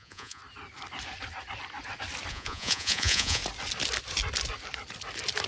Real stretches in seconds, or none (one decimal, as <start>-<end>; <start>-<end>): 0.4-2.3; 3.4-5.5